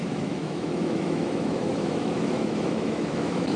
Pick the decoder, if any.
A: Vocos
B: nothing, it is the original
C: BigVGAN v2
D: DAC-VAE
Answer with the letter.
D